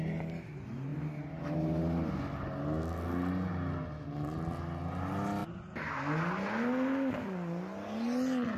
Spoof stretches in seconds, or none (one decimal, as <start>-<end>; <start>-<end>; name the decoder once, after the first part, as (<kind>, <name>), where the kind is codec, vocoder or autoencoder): none